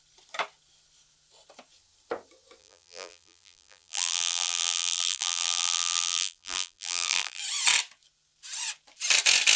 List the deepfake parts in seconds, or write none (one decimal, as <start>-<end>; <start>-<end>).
2.6-7.4